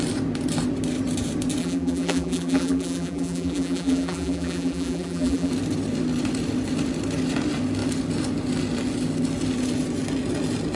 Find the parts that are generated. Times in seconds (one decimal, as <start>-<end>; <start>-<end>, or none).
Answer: 1.6-5.5